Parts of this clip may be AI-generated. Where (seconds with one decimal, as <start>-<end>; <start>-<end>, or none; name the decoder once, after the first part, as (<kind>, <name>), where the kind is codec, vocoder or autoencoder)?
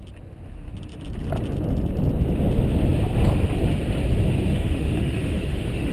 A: 4.5-5.9 (autoencoder, DAC-VAE)